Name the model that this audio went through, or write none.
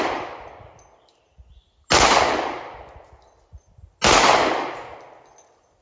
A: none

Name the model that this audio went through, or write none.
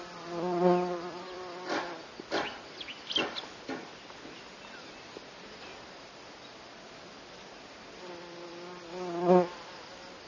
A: none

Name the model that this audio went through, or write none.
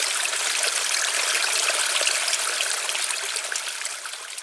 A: none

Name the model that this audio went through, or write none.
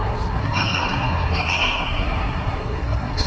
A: codec, SNAC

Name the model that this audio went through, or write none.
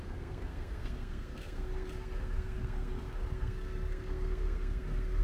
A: codec, SNAC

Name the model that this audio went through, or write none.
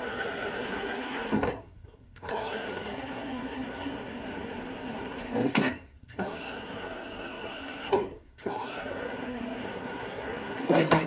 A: codec, SNAC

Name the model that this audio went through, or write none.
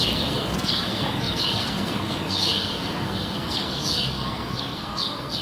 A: codec, SNAC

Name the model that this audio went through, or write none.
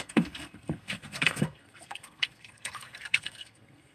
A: codec, SNAC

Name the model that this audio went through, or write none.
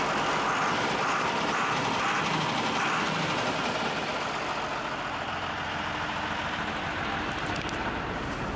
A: none